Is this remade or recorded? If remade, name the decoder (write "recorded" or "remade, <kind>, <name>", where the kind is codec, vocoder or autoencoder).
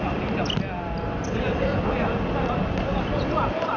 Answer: recorded